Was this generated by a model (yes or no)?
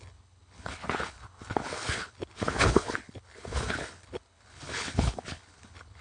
yes